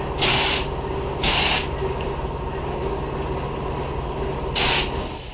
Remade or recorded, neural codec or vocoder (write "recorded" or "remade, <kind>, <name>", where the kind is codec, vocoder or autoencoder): recorded